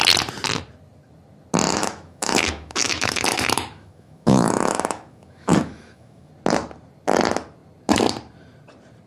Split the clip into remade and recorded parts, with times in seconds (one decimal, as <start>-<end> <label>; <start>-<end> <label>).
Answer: 0.0-1.7 recorded; 1.7-6.3 remade; 6.3-9.1 recorded